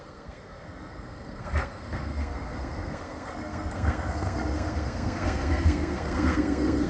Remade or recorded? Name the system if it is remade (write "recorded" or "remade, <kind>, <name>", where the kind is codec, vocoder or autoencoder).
remade, codec, SNAC